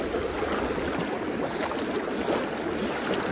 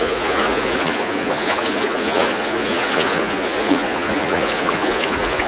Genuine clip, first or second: first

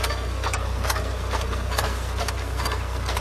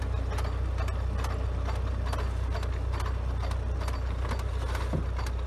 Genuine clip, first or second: second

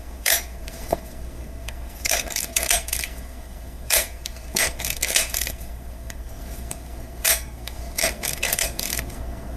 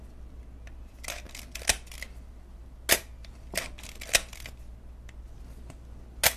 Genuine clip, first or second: second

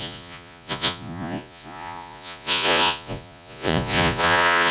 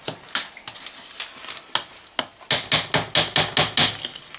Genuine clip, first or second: second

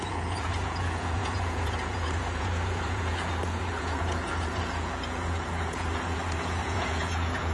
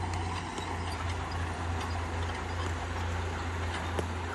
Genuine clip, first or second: second